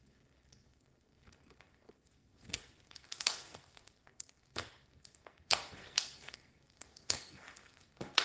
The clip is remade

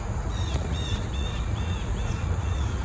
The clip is remade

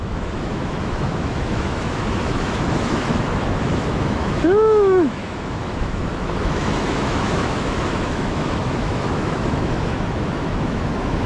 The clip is remade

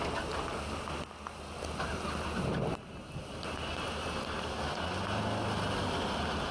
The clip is recorded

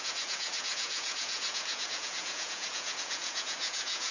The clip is remade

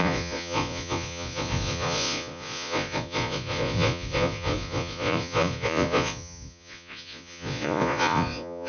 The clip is remade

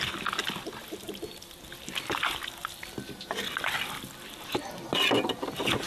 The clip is recorded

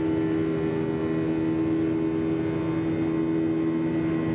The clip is recorded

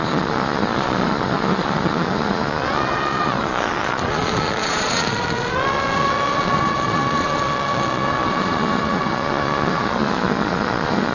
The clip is remade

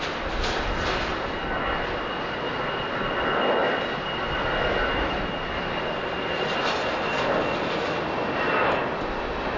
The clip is recorded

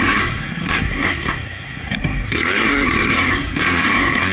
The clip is remade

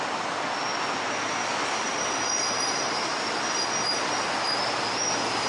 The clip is recorded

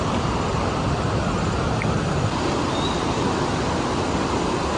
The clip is recorded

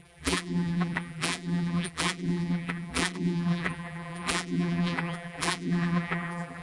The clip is remade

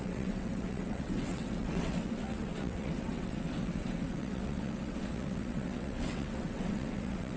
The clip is remade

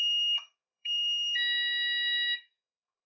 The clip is remade